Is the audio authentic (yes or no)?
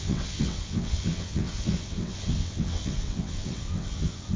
no